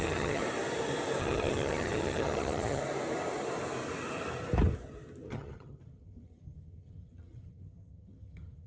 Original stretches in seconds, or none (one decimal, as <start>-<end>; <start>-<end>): 0.4-1.2; 2.8-5.3